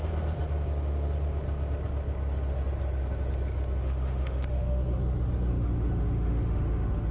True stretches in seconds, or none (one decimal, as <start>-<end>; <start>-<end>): 0.0-3.8; 5.0-5.5

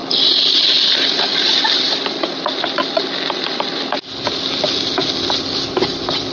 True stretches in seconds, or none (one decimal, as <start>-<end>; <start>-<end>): 0.0-6.3

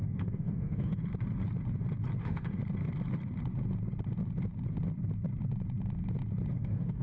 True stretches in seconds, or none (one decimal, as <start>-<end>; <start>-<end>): 1.0-2.2; 2.6-6.5

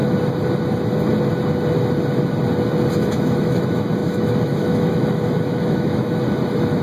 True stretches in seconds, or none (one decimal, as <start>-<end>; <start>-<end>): 0.0-2.9

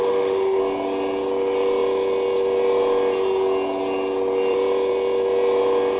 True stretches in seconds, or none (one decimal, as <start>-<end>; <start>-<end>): 0.6-6.0

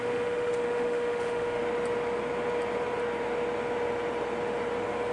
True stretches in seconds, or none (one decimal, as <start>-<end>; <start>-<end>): 1.6-5.1